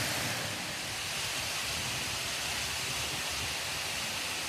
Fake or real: real